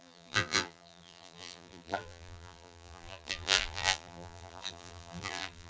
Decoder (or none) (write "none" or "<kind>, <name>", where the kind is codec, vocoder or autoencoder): vocoder, BigVGAN v2